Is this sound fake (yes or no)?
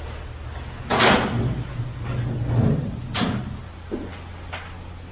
no